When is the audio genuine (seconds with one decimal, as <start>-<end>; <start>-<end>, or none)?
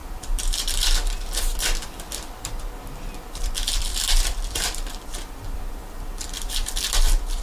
none